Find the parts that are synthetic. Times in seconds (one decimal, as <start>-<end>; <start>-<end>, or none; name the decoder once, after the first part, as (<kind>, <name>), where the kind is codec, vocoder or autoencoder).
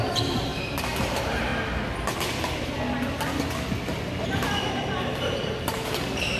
0.0-0.5 (vocoder, BigVGAN v2); 1.1-1.5; 5.3-6.4